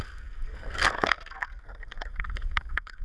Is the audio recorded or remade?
remade